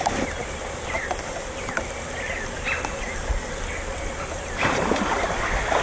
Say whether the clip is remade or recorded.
recorded